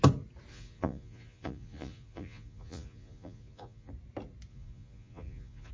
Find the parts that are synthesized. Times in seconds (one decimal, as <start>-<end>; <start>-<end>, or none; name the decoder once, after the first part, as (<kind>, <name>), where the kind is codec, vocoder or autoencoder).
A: 0.5-3.9 (vocoder, Vocos); 4.5-5.7